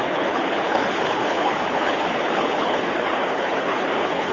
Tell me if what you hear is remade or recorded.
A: remade